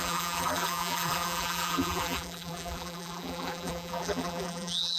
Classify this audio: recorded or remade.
remade